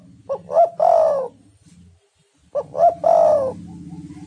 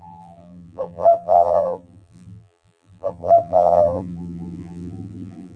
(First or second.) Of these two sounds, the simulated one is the second